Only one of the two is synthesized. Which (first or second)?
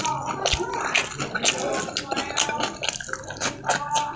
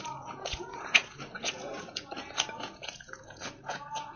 second